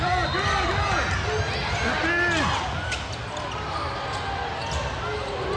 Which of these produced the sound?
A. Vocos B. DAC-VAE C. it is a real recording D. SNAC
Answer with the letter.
C